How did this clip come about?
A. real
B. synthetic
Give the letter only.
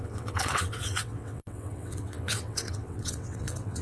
B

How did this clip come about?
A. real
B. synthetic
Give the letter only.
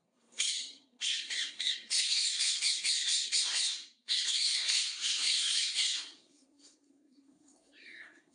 B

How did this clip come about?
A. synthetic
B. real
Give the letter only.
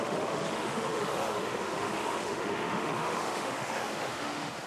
A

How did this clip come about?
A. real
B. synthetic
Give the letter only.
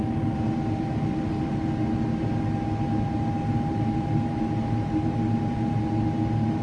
A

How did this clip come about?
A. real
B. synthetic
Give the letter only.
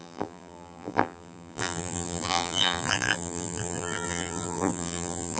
B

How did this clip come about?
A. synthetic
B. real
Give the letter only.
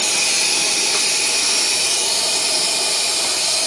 B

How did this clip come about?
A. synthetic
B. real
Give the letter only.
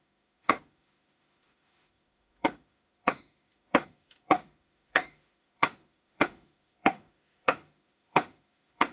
A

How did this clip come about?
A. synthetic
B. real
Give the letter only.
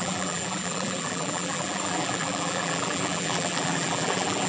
A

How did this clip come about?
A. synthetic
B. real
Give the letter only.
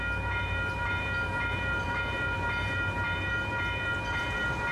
A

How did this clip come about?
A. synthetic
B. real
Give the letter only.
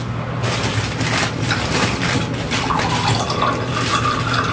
B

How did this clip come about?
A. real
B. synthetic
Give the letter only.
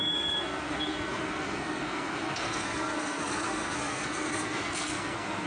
B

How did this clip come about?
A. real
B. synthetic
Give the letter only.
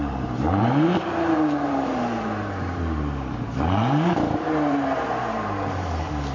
B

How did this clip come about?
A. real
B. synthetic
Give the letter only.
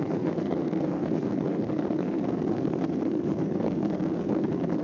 B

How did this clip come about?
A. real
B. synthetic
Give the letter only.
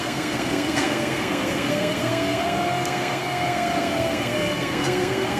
B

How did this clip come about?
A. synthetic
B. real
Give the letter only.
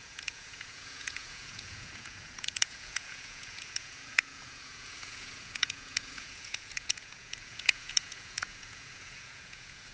A